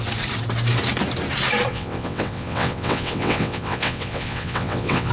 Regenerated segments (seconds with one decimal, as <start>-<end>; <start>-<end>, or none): 1.7-5.1